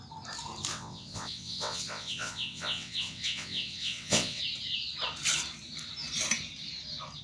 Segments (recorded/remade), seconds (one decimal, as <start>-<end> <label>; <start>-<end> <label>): 0.0-0.7 recorded; 0.7-4.4 remade; 4.4-7.2 recorded